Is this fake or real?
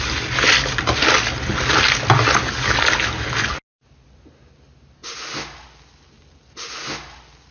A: real